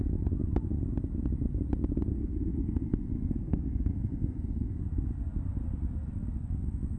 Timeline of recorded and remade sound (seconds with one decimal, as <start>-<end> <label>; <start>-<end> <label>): 0.0-2.1 recorded; 2.1-4.8 remade; 4.8-7.0 recorded